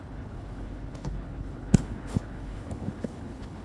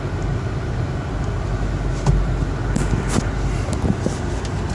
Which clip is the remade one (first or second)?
first